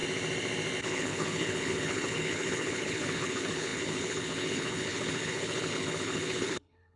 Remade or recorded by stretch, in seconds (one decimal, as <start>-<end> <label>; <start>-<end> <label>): 0.0-0.8 recorded; 0.8-7.0 remade